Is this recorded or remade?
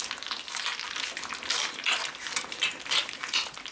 recorded